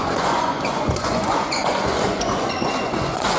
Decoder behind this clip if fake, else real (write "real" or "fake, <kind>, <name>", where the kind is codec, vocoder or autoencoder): fake, vocoder, Vocos